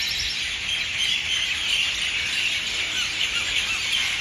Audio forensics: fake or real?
real